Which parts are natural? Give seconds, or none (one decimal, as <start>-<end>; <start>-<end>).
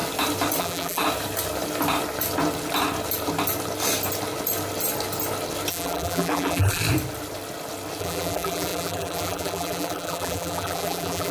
0.0-0.6; 1.0-5.7; 6.8-8.0